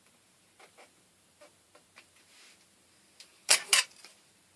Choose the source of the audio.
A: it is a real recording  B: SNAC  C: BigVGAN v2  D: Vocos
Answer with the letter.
C